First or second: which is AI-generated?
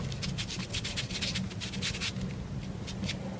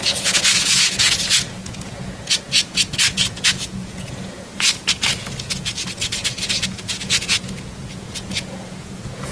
second